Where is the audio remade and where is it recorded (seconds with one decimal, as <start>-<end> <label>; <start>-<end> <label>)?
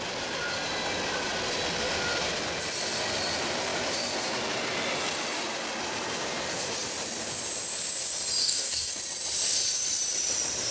0.0-8.4 recorded; 8.4-8.9 remade; 8.9-10.7 recorded